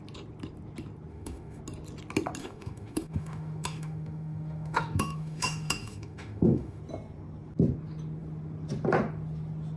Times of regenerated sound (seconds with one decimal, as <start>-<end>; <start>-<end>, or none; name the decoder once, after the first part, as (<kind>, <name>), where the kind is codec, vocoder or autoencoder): 1.1-1.6 (autoencoder, DAC-VAE); 2.4-6.8